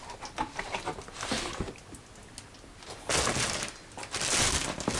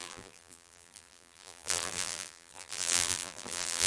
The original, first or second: first